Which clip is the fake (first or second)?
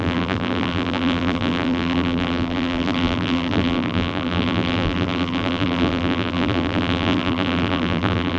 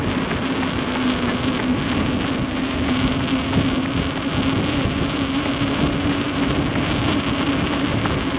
first